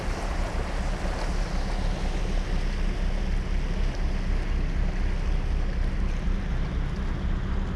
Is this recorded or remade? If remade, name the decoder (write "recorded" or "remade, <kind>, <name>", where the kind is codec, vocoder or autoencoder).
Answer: recorded